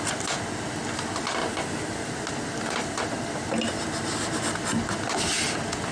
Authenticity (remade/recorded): recorded